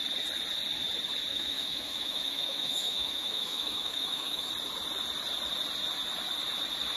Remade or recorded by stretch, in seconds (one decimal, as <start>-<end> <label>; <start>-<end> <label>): 0.0-1.3 recorded; 1.3-4.5 remade; 4.5-7.0 recorded